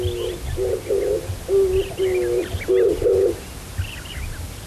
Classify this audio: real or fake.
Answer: real